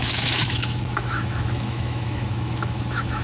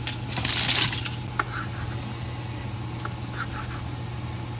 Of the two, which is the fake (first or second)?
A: first